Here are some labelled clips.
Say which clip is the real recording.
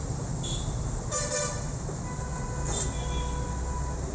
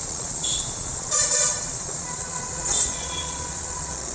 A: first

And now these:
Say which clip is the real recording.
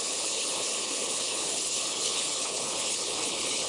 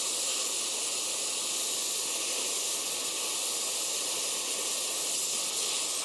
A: second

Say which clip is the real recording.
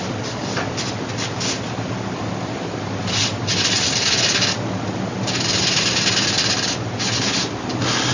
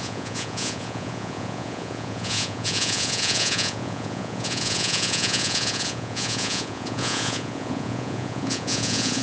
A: first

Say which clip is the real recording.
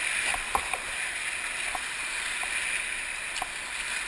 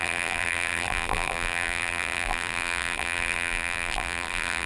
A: first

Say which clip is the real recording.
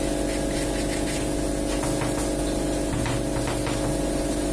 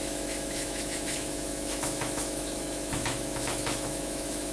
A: first